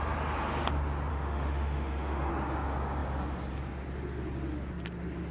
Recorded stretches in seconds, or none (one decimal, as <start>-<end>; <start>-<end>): 0.0-1.1; 2.3-5.3